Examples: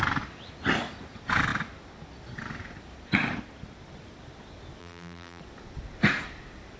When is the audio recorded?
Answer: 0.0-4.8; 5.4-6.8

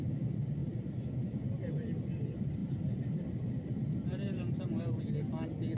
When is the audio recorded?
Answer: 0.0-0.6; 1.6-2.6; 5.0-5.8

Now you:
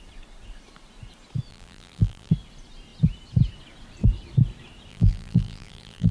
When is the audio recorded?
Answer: 0.0-1.5; 2.3-4.9

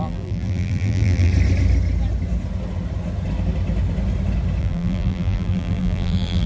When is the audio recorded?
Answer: 1.3-4.6

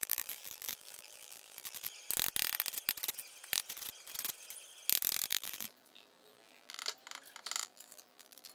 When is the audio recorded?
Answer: 1.9-5.3; 6.8-7.6

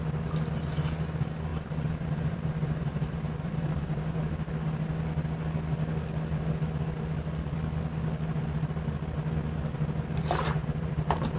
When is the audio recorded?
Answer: 0.0-1.5; 4.5-10.6

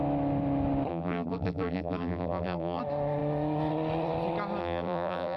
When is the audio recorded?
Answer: 0.0-0.9; 2.8-4.6